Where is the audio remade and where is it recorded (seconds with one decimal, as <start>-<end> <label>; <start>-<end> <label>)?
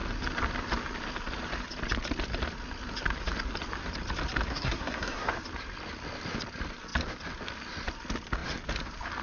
0.0-4.5 recorded; 4.5-5.3 remade; 5.3-9.2 recorded